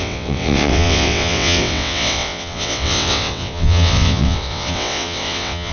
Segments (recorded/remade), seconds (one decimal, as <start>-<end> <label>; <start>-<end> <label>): 0.0-5.7 remade

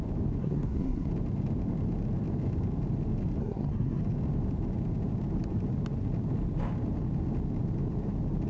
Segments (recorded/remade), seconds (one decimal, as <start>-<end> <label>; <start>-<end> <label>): 0.0-0.4 recorded; 0.4-1.1 remade; 1.1-3.4 recorded; 3.4-4.0 remade; 4.0-8.5 recorded

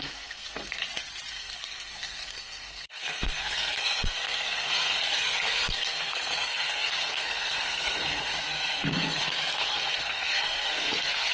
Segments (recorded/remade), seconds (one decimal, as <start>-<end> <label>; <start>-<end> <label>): 0.0-0.8 remade; 0.8-1.3 recorded; 1.3-11.3 remade

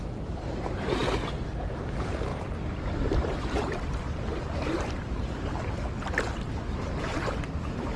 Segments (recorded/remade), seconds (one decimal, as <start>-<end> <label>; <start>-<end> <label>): 0.0-2.3 recorded; 2.3-3.6 remade; 3.6-8.0 recorded

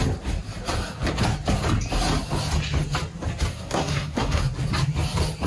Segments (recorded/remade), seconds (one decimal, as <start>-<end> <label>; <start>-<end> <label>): 0.0-3.5 recorded; 3.5-4.4 remade; 4.4-5.5 recorded

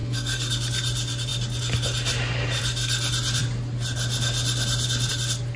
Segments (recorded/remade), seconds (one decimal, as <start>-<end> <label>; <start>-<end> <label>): 0.0-0.5 remade; 0.5-5.6 recorded

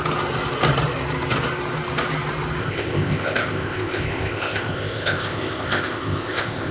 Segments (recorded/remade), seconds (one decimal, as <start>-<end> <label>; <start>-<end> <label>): 0.0-2.6 recorded; 2.6-6.7 remade

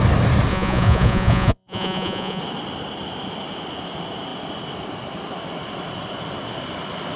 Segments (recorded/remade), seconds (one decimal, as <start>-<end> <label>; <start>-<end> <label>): 0.0-0.5 recorded; 0.5-2.4 remade; 2.4-7.2 recorded